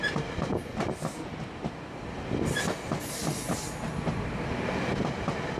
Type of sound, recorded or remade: recorded